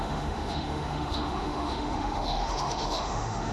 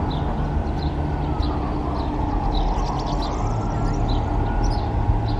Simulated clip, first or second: first